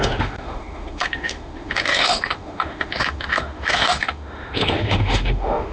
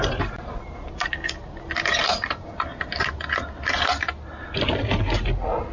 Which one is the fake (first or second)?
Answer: first